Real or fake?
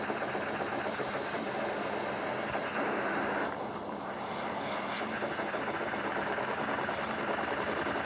real